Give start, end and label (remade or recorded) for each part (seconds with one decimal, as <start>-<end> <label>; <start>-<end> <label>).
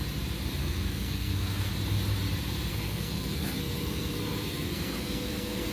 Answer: 0.0-0.6 recorded; 0.6-1.7 remade; 1.7-2.7 recorded; 2.7-5.7 remade